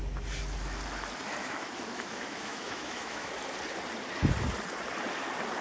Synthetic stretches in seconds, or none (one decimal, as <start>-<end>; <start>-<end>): 1.4-3.3